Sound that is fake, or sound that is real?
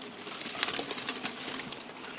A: real